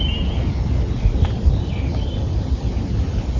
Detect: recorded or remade recorded